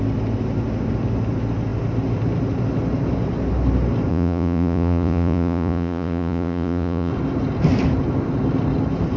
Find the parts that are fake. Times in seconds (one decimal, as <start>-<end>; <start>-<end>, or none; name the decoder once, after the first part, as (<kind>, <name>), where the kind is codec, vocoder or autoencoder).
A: 4.1-7.1 (vocoder, Vocos)